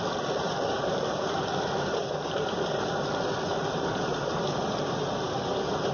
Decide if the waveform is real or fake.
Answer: real